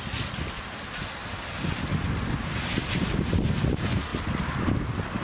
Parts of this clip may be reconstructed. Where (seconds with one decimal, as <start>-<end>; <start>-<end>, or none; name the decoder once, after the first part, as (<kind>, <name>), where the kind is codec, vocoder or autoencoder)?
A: none